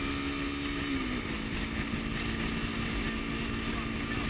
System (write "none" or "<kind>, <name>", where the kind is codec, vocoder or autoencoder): none